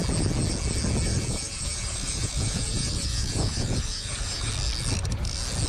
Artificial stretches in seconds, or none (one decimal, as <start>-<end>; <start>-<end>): 1.1-4.5